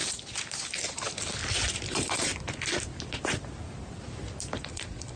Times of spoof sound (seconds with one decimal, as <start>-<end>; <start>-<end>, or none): 1.9-2.3; 4.6-5.2